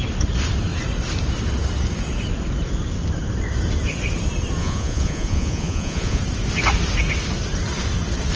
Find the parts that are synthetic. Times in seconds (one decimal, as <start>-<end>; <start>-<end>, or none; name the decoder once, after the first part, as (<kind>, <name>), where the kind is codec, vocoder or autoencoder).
4.6-6.2 (vocoder, Vocos)